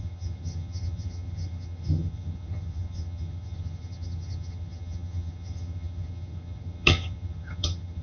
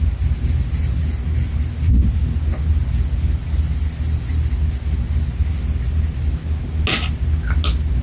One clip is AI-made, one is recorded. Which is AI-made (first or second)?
first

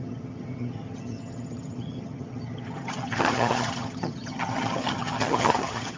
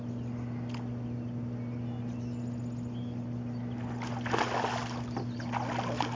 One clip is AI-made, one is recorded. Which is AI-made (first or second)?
first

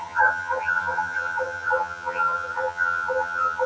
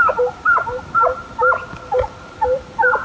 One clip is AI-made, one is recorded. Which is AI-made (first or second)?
first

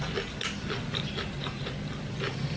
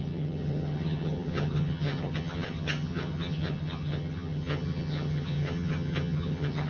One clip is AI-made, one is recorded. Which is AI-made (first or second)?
second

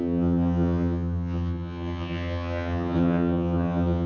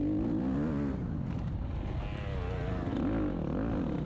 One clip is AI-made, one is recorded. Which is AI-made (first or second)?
first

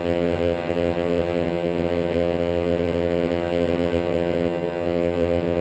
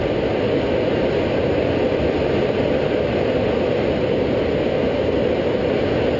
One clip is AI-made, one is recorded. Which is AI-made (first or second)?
first